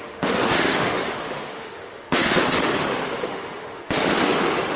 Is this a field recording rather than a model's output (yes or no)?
no